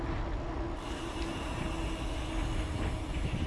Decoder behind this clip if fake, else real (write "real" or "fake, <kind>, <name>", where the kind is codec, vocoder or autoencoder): real